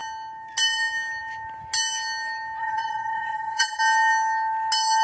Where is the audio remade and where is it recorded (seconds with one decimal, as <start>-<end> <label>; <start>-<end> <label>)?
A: 0.0-2.6 recorded; 2.6-3.8 remade; 3.8-5.0 recorded